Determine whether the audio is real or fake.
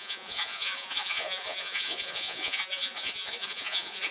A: fake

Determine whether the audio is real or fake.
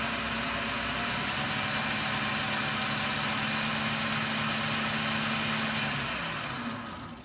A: real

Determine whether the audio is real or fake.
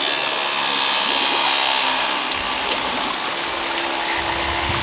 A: real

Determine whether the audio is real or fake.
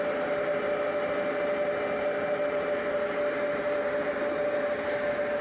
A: real